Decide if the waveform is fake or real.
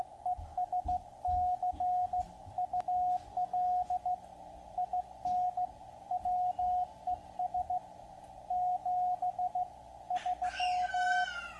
real